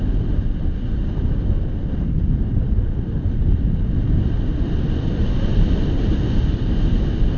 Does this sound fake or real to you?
real